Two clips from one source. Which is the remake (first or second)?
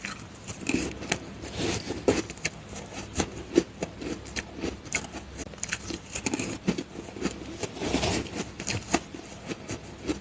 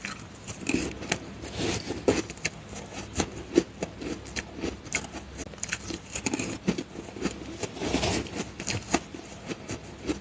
first